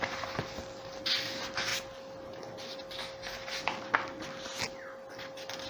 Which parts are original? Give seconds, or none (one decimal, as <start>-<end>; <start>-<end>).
0.0-5.7